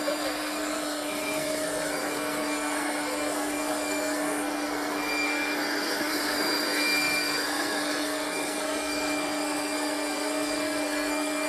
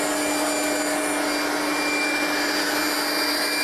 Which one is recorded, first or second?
second